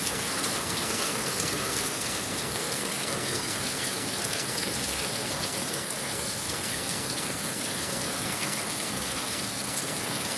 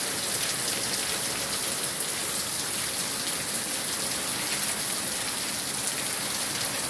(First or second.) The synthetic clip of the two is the first